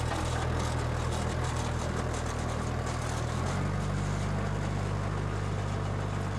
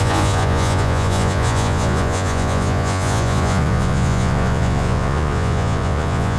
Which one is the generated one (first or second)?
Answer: second